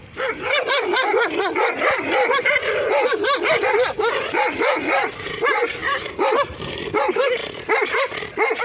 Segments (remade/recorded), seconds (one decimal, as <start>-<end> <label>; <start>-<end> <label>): 0.0-5.8 recorded; 5.8-6.5 remade; 6.5-8.6 recorded